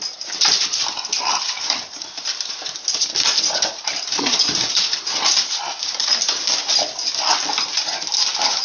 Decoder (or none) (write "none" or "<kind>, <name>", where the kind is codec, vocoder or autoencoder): none